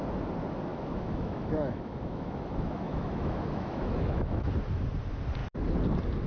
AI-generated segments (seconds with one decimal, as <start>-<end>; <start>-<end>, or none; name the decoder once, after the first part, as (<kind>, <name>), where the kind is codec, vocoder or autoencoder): 0.7-4.5 (autoencoder, DAC-VAE)